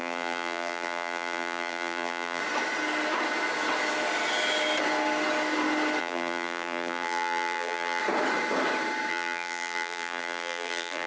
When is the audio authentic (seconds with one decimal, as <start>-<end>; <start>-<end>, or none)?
2.4-6.0; 8.0-9.1